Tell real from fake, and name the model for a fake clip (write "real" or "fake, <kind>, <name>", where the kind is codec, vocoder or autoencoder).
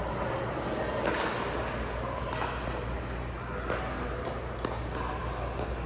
real